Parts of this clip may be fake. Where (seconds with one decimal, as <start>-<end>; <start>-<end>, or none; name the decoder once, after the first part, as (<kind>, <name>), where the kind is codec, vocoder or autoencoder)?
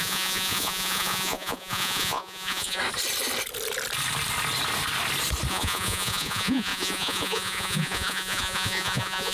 0.0-2.8 (vocoder, Vocos); 5.5-9.3